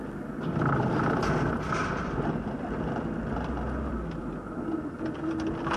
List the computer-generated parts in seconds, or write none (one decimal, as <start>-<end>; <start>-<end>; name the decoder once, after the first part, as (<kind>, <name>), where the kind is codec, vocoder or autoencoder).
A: none